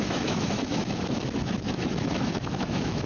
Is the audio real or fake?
fake